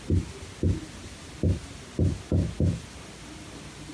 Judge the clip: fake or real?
real